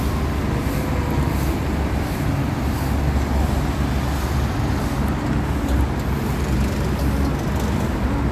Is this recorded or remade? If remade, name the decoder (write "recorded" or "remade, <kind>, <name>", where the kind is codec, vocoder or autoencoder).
recorded